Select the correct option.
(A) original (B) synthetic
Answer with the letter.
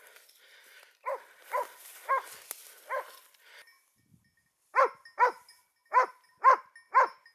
A